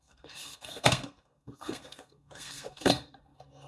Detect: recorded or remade remade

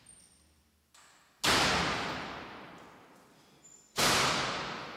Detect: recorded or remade recorded